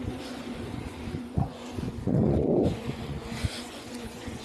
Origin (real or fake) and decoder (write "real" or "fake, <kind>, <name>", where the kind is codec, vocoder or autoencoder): fake, vocoder, Vocos